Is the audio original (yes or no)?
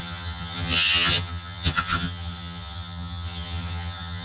no